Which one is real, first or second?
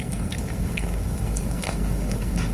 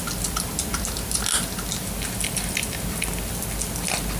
second